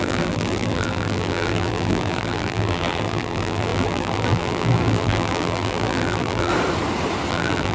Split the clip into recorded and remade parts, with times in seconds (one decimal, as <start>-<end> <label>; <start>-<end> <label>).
0.0-6.5 remade; 6.5-7.3 recorded; 7.3-7.7 remade